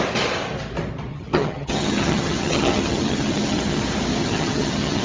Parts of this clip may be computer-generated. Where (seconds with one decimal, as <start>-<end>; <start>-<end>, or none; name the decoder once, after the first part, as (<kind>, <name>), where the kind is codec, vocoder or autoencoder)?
1.1-3.8 (vocoder, HiFi-GAN); 4.2-5.0